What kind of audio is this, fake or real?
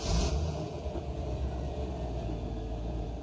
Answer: fake